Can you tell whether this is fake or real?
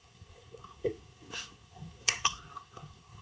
fake